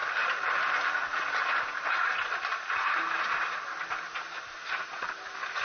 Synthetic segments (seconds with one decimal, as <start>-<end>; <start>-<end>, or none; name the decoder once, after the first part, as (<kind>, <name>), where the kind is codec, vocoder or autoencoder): none